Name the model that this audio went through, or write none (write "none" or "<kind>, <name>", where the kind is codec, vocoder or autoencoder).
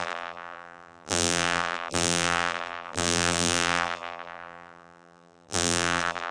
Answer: vocoder, BigVGAN v2